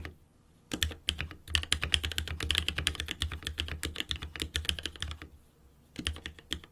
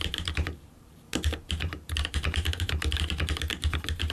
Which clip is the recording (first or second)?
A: first